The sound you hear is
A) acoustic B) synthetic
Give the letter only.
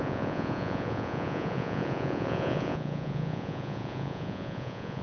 B